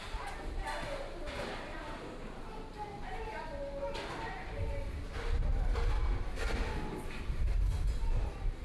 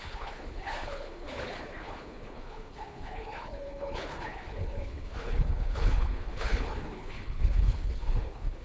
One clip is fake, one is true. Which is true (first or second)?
first